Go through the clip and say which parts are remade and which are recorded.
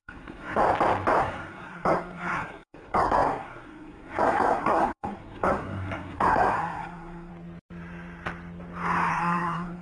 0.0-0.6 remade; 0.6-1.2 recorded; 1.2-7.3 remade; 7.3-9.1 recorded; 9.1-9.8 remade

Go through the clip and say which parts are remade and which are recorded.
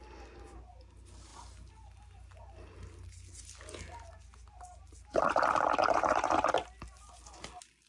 0.0-7.9 recorded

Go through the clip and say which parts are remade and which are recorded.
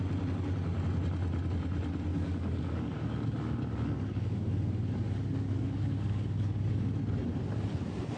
0.0-2.1 recorded; 2.1-7.0 remade; 7.0-8.2 recorded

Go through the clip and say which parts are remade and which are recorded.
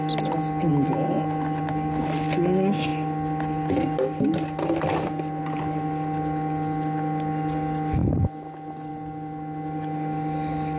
0.0-10.8 recorded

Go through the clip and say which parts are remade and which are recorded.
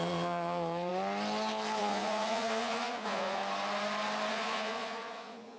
0.0-0.9 remade; 0.9-1.8 recorded; 1.8-3.4 remade; 3.4-4.3 recorded; 4.3-5.6 remade